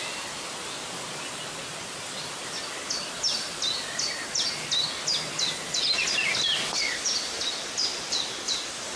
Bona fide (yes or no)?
yes